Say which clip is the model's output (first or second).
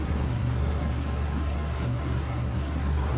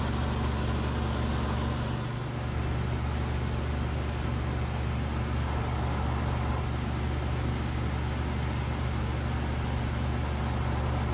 first